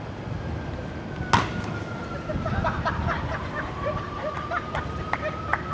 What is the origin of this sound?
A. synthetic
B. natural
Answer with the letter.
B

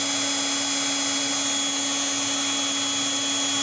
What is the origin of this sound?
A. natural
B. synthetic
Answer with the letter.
A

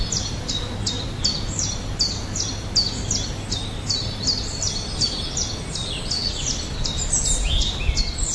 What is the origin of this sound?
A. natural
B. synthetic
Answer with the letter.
A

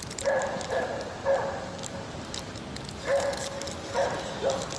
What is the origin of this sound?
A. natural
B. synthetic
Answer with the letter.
A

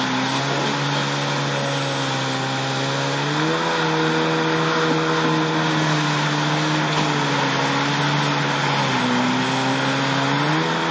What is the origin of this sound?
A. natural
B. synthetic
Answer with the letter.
A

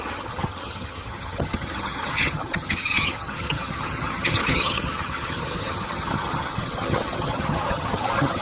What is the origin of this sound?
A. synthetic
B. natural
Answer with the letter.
A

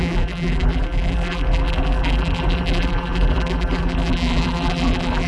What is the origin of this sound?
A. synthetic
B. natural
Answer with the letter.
A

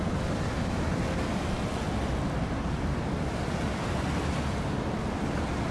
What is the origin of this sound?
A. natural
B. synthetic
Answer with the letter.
A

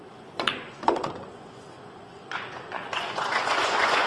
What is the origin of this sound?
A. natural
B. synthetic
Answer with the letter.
B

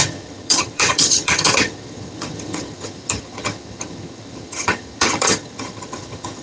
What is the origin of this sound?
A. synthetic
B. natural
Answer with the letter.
A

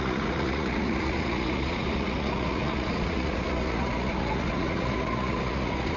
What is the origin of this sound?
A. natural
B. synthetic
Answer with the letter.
B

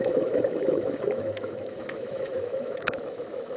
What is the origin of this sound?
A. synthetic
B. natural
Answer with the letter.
A